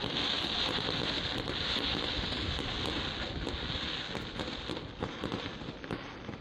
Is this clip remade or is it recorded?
recorded